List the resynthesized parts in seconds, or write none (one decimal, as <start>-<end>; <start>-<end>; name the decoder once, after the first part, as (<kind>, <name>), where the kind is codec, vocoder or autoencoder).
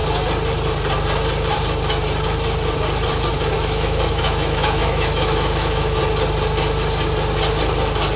3.3-6.0 (autoencoder, DAC-VAE)